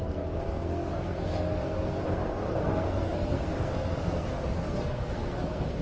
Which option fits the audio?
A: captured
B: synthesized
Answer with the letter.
B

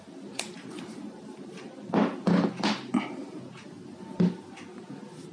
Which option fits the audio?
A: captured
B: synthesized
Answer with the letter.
A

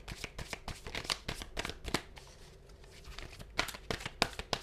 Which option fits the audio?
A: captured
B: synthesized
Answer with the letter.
A